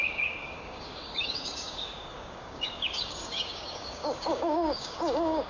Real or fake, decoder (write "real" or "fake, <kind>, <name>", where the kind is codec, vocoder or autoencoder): fake, codec, DAC